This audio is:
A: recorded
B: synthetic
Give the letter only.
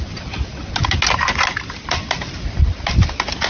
A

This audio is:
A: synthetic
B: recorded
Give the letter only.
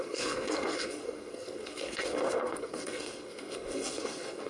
A